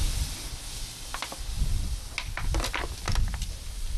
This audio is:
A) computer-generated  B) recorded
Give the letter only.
B